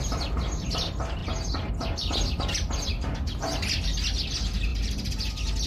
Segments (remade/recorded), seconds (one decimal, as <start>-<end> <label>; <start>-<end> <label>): 0.0-1.2 recorded; 1.2-1.7 remade; 1.7-4.7 recorded; 4.7-5.3 remade; 5.3-5.7 recorded